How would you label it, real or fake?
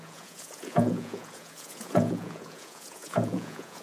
fake